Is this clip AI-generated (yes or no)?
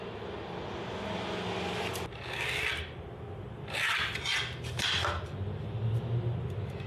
no